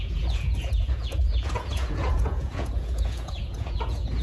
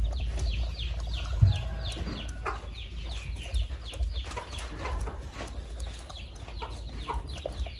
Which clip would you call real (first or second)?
second